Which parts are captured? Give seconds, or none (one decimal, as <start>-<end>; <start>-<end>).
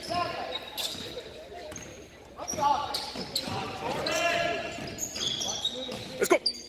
0.0-1.9; 2.9-6.7